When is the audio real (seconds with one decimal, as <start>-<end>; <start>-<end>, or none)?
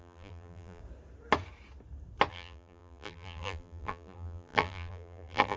0.8-2.3